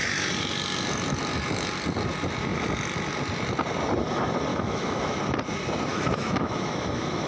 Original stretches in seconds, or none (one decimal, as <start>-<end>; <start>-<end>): 0.0-4.5; 5.2-5.9